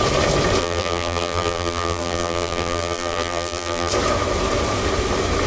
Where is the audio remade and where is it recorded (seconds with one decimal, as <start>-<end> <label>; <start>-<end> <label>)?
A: 0.0-0.6 recorded; 0.6-3.9 remade; 3.9-5.5 recorded